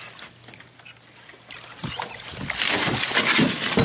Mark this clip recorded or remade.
recorded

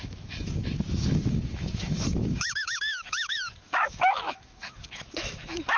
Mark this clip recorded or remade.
remade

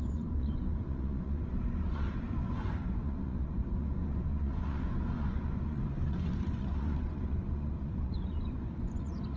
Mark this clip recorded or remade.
remade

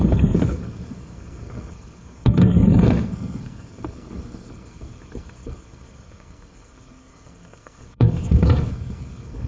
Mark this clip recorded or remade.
remade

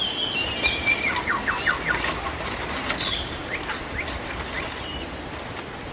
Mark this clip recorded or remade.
recorded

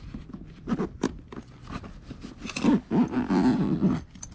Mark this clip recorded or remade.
recorded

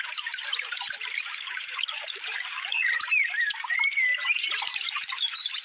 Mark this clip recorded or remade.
remade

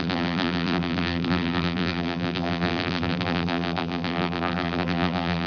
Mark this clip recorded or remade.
remade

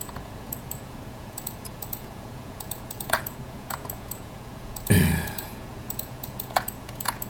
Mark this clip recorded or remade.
remade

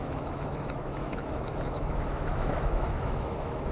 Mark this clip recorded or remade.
remade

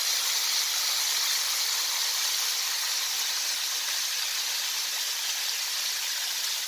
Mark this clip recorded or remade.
recorded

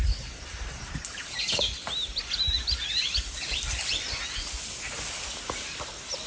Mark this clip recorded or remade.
recorded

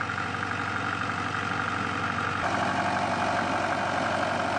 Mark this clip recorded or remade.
recorded